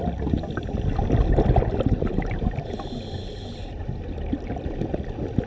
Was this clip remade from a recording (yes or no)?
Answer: no